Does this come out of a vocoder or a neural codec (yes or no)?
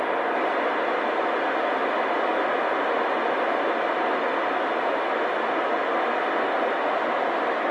no